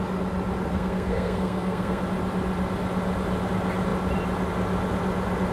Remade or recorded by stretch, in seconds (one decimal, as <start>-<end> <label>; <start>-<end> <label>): 0.0-0.7 recorded; 0.7-2.0 remade; 2.0-5.5 recorded